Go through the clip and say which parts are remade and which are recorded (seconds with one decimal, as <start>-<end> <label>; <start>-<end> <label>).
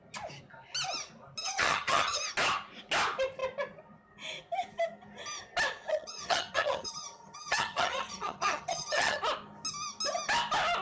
0.0-1.4 recorded; 1.4-2.2 remade; 2.2-5.9 recorded; 5.9-9.2 remade; 9.2-10.8 recorded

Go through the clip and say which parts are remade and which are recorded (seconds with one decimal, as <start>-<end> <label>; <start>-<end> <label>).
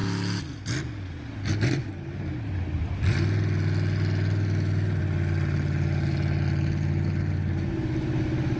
0.0-8.6 recorded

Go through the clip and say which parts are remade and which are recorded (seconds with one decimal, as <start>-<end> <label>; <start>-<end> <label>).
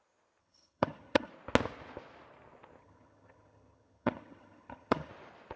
0.0-0.4 recorded; 0.4-1.3 remade; 1.3-2.8 recorded; 2.8-5.1 remade; 5.1-5.6 recorded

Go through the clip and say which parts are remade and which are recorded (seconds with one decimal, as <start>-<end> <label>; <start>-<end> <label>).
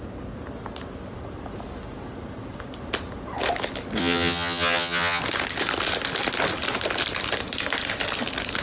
0.0-4.0 recorded; 4.0-5.2 remade; 5.2-8.6 recorded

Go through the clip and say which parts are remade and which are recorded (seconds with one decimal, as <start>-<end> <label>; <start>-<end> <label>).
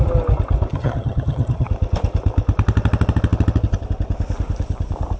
0.0-0.7 recorded; 0.7-1.7 remade; 1.7-5.2 recorded